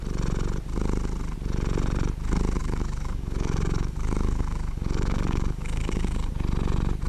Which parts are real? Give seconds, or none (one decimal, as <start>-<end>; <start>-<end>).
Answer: 0.0-2.6; 6.3-7.1